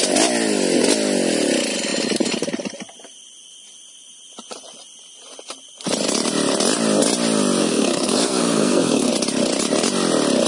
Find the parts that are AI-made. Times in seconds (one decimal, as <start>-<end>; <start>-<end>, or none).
7.6-9.1